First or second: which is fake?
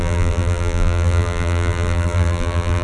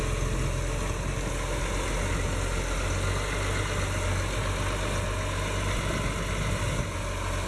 first